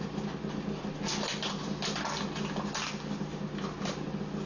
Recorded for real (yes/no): yes